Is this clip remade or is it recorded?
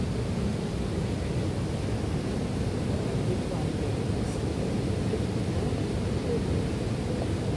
recorded